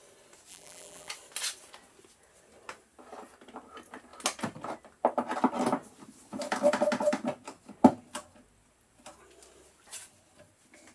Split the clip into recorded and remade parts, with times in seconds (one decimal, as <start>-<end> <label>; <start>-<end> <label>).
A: 0.0-0.5 recorded; 0.5-1.1 remade; 1.1-10.9 recorded

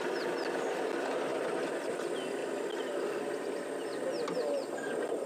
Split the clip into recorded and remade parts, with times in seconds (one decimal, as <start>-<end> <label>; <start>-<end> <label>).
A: 0.0-5.3 recorded